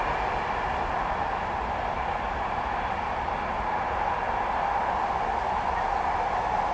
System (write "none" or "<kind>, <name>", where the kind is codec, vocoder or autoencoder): none